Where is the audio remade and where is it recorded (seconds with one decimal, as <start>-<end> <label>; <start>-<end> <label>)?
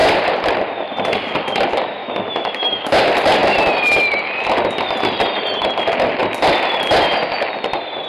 0.0-2.0 recorded; 2.0-2.9 remade; 2.9-8.1 recorded